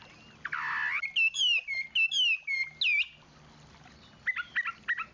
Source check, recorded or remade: recorded